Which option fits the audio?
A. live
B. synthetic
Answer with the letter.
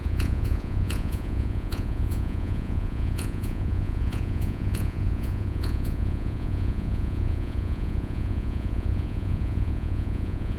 B